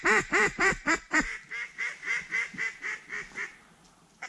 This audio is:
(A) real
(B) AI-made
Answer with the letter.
B